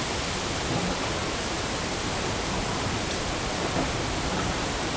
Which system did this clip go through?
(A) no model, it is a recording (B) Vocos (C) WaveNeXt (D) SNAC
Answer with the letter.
A